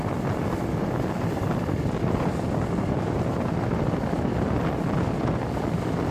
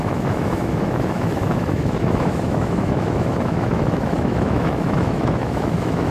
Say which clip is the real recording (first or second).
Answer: first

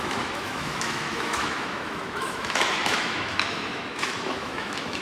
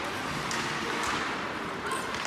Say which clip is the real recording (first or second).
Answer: second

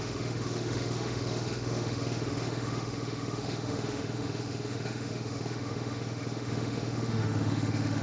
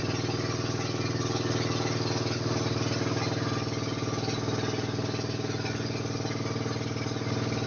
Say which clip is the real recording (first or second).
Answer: second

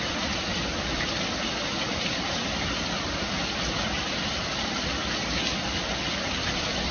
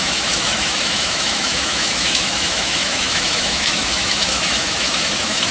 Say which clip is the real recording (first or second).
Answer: first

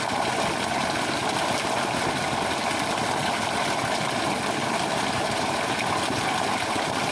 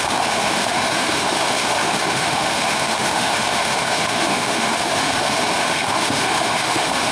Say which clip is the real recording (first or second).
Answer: first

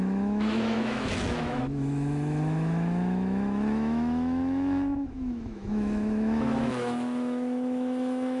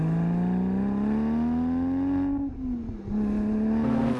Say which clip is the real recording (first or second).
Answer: second